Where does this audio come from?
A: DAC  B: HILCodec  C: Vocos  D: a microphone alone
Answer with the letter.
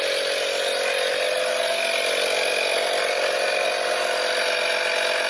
D